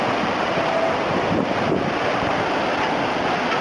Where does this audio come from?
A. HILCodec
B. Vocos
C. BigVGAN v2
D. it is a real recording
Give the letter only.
D